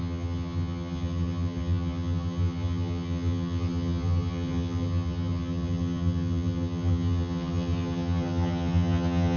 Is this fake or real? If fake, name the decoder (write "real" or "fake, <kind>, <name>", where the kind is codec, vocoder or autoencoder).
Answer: fake, vocoder, HiFi-GAN